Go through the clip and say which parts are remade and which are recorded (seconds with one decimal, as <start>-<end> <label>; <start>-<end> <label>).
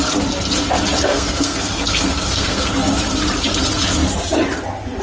0.0-1.1 recorded; 1.1-2.7 remade; 2.7-5.0 recorded